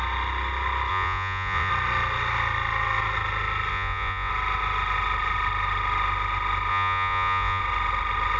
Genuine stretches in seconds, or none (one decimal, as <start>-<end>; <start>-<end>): 0.0-0.9; 1.7-3.7; 4.3-6.7; 7.6-8.4